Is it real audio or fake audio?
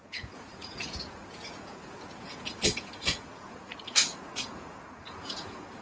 fake